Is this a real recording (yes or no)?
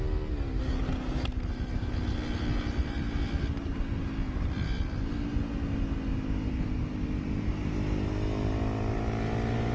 yes